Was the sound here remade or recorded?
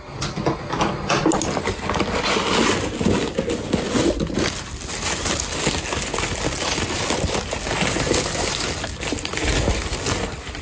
recorded